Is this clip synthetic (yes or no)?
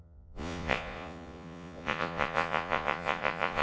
yes